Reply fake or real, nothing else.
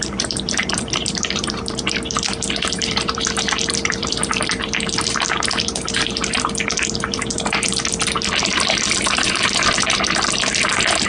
fake